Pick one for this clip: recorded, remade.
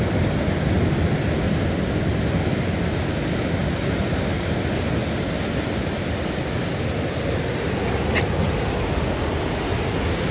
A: recorded